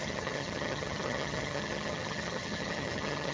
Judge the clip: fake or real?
fake